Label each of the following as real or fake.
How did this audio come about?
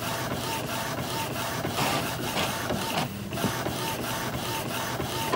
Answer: real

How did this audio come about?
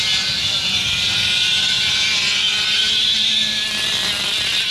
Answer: real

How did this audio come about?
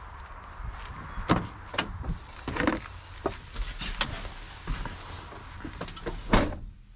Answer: real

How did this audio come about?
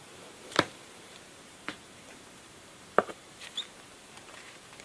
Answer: fake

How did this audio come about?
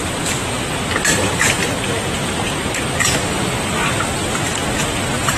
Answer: real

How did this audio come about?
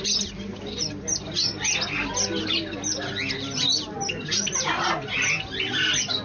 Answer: real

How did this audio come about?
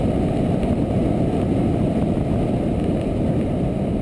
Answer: real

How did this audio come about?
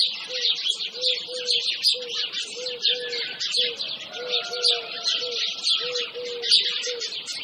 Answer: real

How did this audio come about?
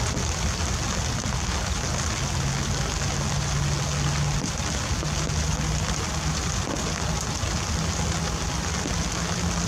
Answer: real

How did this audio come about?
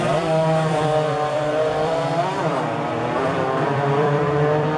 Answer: fake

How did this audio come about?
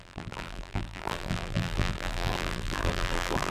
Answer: fake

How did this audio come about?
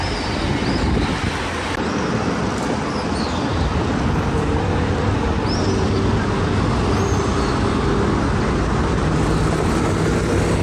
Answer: real